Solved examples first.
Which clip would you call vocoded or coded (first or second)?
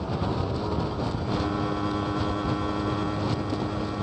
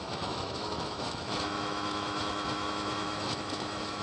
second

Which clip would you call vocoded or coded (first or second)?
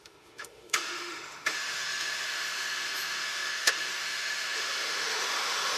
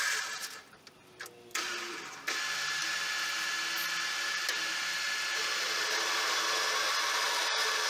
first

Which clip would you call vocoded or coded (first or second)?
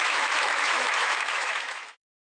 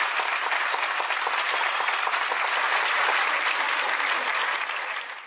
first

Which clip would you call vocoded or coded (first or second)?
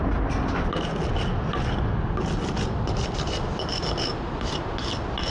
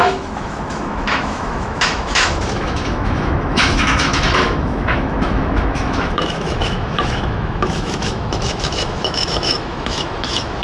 second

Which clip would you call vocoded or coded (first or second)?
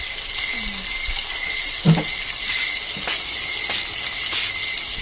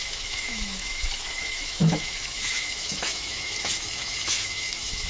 second